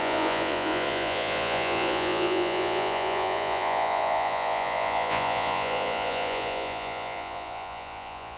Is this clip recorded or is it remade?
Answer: remade